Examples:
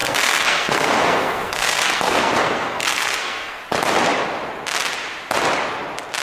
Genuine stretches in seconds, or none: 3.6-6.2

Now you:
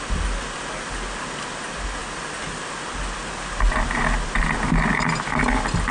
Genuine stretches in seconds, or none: 0.0-5.9

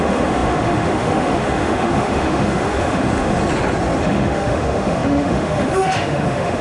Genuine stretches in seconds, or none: 3.4-4.0

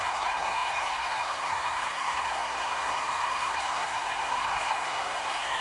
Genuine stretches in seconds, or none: none

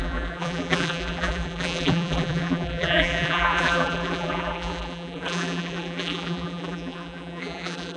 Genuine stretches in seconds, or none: none